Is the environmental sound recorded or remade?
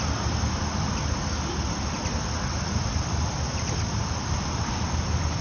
recorded